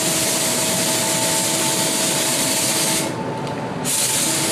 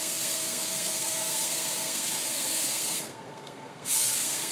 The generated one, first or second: second